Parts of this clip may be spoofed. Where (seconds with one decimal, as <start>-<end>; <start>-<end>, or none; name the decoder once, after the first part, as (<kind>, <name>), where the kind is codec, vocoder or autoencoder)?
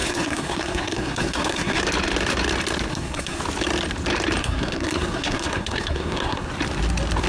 0.0-1.8 (codec, SNAC); 2.9-3.4; 4.4-6.5